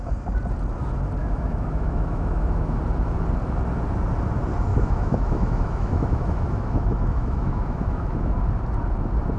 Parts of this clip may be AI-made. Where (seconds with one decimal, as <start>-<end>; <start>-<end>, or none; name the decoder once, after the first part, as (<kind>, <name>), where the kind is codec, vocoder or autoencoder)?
1.2-2.8 (autoencoder, DAC-VAE); 4.7-8.3